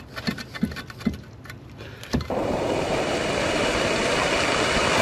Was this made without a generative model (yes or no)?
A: yes